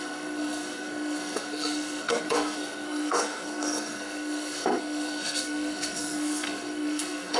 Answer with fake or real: fake